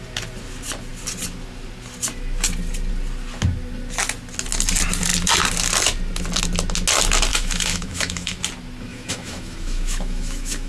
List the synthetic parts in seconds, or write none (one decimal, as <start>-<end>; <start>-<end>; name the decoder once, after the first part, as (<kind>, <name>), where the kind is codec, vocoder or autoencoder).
7.3-8.4 (autoencoder, DAC-VAE); 8.9-10.7